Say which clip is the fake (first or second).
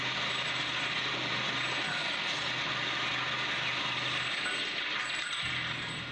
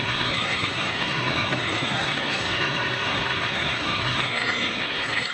second